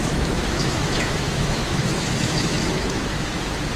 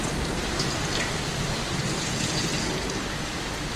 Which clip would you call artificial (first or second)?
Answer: first